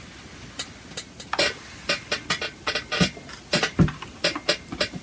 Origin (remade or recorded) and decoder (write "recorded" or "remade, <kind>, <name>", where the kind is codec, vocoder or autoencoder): recorded